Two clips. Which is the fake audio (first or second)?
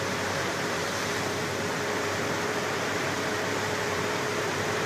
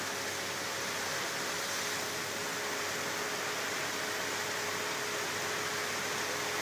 first